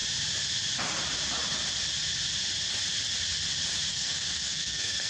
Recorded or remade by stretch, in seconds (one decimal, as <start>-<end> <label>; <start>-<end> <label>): 0.0-3.9 recorded; 3.9-5.1 remade